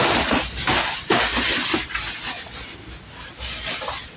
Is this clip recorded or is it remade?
recorded